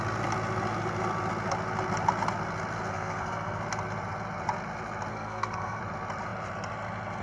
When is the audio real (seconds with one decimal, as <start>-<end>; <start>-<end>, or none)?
0.0-2.9; 3.6-5.1; 5.8-7.2